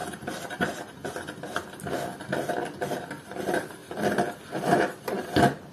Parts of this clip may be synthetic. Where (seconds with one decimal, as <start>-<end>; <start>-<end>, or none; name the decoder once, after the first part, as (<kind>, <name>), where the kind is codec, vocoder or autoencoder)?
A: 0.6-1.0 (vocoder, BigVGAN v2); 3.2-3.8; 4.5-5.7